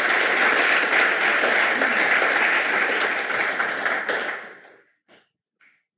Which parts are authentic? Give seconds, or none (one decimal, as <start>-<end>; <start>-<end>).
0.0-6.0